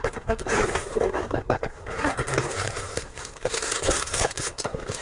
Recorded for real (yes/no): no